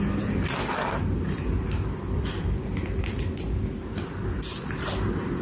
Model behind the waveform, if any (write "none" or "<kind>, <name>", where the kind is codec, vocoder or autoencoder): none